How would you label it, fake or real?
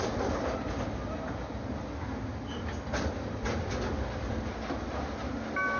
real